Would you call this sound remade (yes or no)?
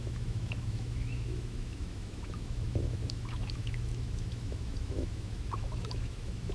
yes